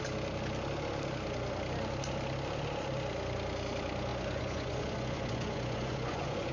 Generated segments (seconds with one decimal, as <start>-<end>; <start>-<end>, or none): 4.1-6.5